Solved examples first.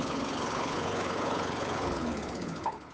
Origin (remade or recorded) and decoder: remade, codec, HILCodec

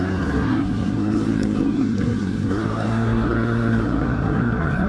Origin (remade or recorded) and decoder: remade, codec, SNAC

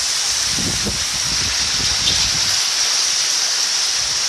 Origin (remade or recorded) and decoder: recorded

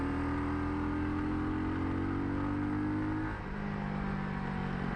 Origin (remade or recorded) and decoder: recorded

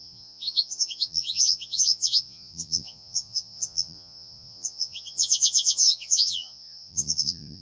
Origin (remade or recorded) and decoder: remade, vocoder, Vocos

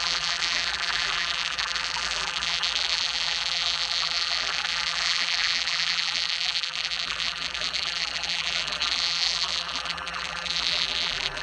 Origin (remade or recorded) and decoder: remade, vocoder, BigVGAN v2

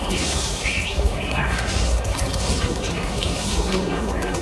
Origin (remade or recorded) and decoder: remade, codec, SNAC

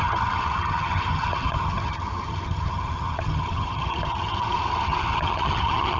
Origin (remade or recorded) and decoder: remade, vocoder, HiFi-GAN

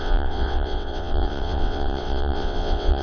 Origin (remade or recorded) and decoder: remade, vocoder, WaveNeXt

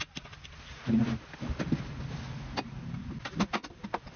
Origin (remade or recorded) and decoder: recorded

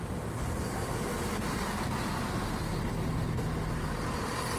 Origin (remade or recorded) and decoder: recorded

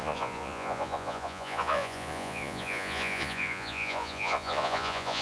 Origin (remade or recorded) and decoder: remade, vocoder, Vocos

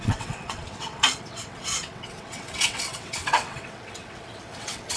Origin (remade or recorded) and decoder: remade, vocoder, WaveNeXt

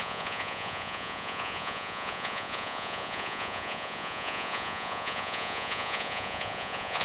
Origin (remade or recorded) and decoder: remade, vocoder, Vocos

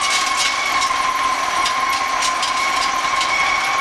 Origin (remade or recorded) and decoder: recorded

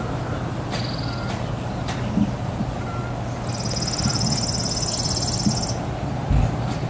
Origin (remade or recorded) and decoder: recorded